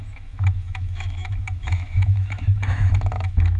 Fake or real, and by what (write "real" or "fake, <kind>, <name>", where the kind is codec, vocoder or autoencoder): fake, autoencoder, DAC-VAE